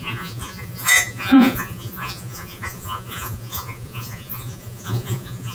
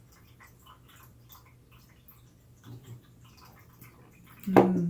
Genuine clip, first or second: second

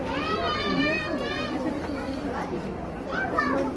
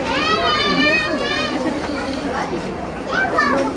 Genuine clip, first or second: first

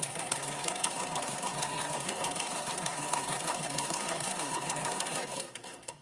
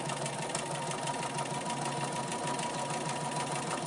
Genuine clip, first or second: second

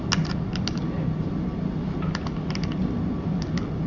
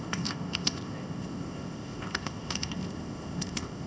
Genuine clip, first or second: first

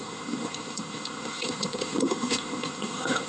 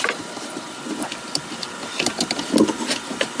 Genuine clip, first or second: second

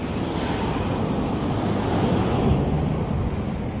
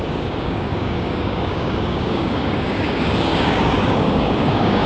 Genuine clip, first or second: first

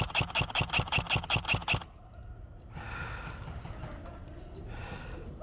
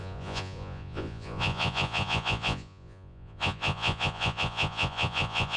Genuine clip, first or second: first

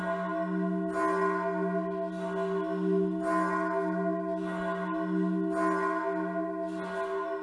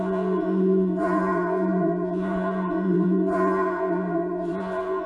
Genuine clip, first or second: first